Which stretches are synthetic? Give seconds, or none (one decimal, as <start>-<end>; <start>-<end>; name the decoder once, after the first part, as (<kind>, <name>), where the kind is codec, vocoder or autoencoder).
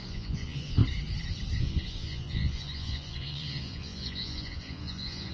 0.0-0.8 (vocoder, Vocos); 1.6-5.3